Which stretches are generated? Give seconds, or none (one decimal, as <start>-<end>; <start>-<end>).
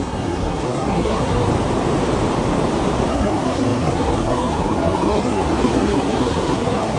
0.0-1.5; 3.1-7.0